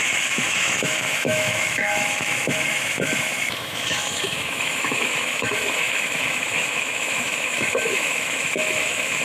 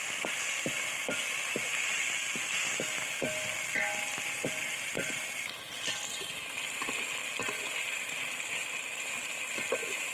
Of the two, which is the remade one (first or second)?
first